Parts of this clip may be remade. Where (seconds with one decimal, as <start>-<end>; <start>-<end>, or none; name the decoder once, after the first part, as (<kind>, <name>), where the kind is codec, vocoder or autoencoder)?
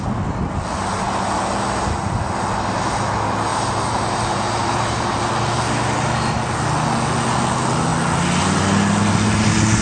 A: 3.5-5.2 (vocoder, BigVGAN v2)